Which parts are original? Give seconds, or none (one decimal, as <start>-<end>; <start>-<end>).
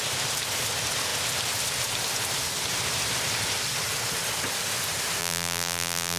0.0-5.2